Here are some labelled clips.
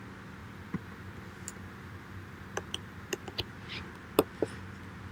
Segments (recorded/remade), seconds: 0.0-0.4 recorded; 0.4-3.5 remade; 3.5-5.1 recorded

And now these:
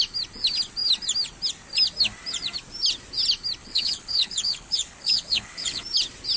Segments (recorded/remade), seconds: 0.0-3.6 recorded; 3.6-5.8 remade; 5.8-6.4 recorded

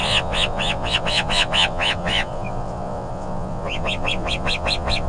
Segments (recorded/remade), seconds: 0.0-5.1 remade

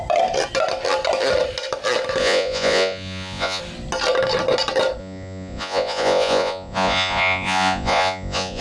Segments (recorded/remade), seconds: 0.0-2.2 recorded; 2.2-3.6 remade; 3.6-5.0 recorded; 5.0-8.6 remade